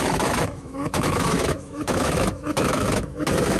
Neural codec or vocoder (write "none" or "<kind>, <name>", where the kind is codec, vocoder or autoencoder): autoencoder, DAC-VAE